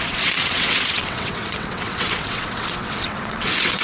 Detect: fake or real fake